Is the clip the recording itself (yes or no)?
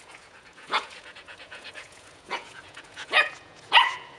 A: no